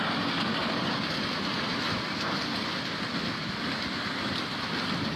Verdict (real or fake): real